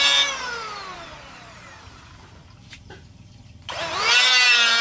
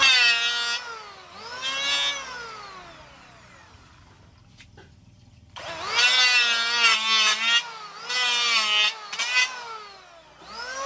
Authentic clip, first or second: second